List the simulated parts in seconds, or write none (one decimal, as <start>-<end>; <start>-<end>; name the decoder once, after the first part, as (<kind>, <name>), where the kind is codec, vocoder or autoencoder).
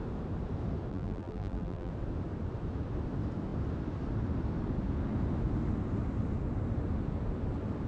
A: 0.9-1.9 (vocoder, BigVGAN v2)